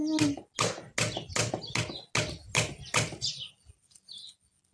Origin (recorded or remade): recorded